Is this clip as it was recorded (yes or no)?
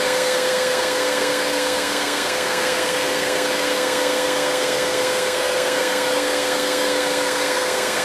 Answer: no